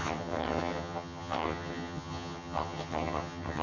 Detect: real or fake fake